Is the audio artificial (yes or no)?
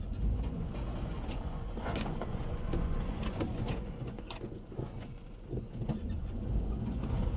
yes